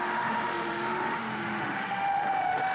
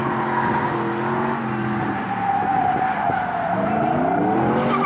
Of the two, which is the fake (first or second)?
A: first